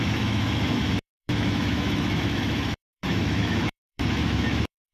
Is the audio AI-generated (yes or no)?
yes